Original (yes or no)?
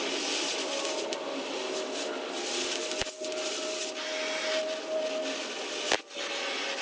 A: yes